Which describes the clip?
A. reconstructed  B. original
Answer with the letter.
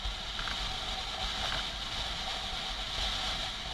B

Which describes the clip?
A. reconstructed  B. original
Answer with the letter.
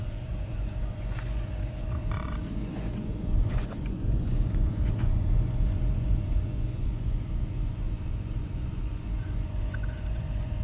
A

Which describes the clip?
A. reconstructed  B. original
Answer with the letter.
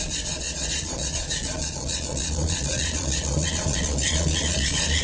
A